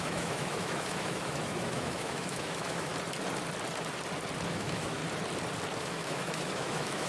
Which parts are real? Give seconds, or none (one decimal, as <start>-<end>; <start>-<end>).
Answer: 2.9-4.5; 5.0-5.8